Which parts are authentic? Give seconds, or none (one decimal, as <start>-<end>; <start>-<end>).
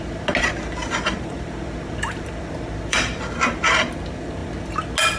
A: 0.0-0.8; 3.9-5.2